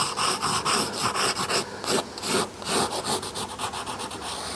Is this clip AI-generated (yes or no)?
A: no